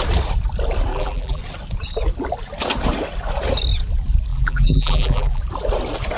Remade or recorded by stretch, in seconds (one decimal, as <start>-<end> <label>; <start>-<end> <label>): 0.0-0.9 recorded; 0.9-1.4 remade; 1.4-4.3 recorded; 4.3-5.4 remade; 5.4-6.2 recorded